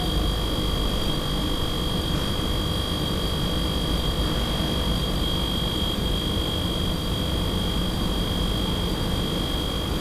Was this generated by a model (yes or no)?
no